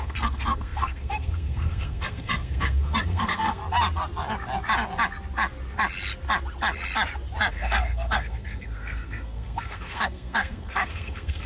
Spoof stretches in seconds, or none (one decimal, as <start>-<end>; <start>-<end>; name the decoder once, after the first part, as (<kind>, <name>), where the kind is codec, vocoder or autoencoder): 0.0-3.6 (codec, SNAC); 7.5-11.5